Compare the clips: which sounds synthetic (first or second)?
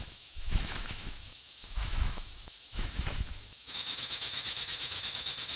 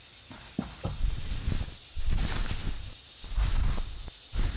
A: first